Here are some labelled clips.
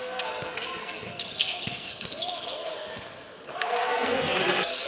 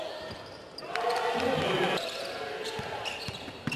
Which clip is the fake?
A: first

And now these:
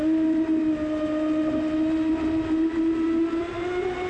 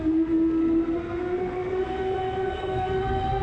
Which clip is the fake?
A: second